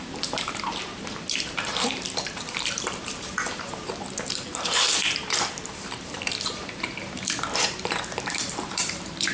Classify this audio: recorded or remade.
remade